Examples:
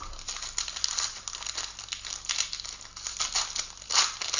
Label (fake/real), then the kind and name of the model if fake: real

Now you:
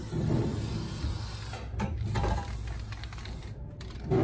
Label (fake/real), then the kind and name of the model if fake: real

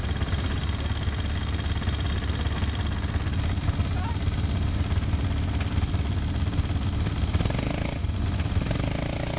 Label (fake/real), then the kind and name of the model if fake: real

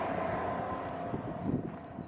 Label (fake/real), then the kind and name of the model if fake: real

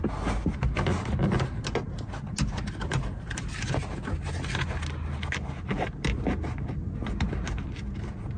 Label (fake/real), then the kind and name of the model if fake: real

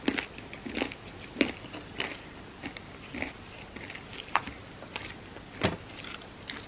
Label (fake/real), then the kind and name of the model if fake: real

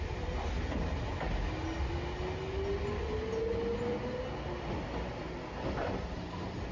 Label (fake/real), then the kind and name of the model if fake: real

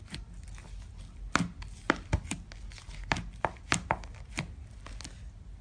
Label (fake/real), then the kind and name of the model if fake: real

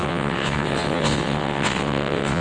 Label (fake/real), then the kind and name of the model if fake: fake, vocoder, WaveNeXt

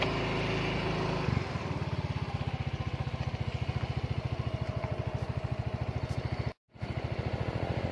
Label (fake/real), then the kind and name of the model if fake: real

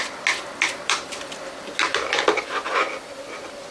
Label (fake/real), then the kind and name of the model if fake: real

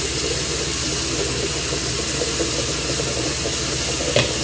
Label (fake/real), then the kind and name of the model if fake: real